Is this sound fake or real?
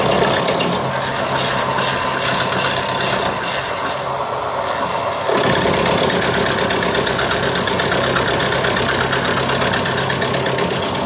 real